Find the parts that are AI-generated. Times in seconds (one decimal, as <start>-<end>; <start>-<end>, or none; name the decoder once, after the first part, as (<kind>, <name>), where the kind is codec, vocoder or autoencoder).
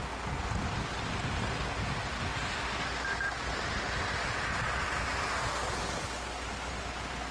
2.3-6.7 (vocoder, BigVGAN v2)